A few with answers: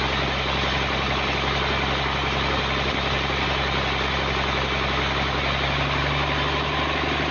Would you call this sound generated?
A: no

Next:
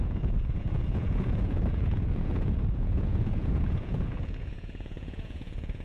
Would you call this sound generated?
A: yes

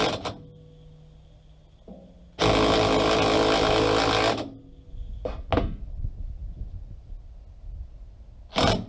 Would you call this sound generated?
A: no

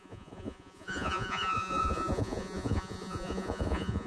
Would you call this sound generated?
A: yes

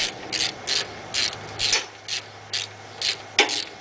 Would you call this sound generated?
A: no